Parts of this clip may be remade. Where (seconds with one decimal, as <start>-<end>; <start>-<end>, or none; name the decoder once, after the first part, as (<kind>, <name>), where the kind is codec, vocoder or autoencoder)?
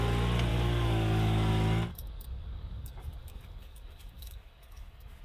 0.5-1.5 (codec, DAC); 1.9-5.2